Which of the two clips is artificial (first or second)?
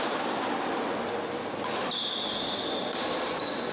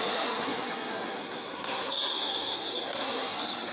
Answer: second